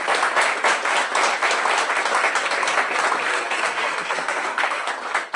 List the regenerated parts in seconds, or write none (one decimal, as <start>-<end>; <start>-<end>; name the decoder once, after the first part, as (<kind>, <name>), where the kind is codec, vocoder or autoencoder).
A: 3.3-4.9 (codec, SNAC)